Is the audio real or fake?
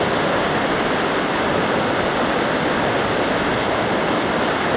real